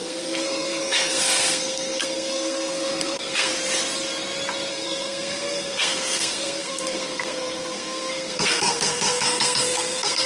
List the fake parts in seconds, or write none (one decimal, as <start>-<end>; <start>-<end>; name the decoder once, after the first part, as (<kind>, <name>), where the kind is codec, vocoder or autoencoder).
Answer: 0.0-3.5 (codec, SNAC); 4.7-10.3